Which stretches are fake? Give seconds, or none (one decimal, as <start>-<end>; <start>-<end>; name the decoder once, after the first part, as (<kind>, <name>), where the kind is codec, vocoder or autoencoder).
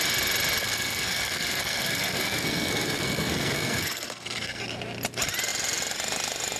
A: 0.6-4.6 (codec, SNAC)